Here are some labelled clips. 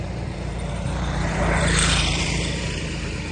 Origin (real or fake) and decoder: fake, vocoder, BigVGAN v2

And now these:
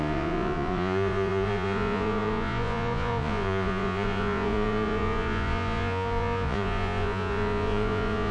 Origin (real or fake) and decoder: fake, vocoder, Vocos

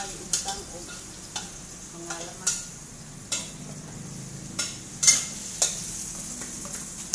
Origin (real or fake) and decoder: real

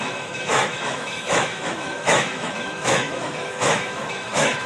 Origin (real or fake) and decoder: fake, autoencoder, DAC-VAE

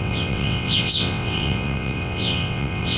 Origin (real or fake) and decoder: fake, vocoder, WaveNeXt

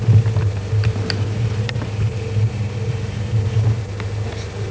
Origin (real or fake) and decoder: real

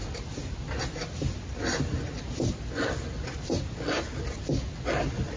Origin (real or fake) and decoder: real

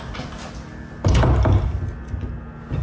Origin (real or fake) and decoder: real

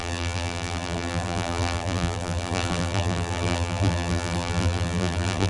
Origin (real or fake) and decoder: fake, vocoder, BigVGAN v2